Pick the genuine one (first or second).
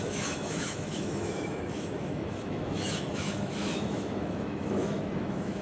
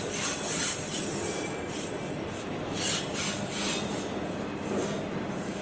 second